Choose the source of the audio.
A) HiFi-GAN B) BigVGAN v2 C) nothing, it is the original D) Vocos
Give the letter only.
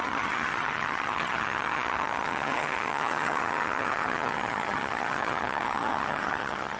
A